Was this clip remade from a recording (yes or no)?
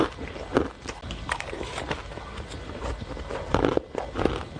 no